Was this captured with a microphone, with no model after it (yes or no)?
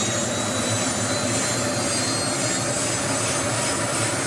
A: yes